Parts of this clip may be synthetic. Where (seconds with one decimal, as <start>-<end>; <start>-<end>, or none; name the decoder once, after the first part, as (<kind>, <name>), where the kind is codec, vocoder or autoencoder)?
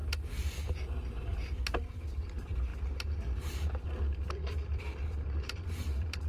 1.9-6.3 (vocoder, BigVGAN v2)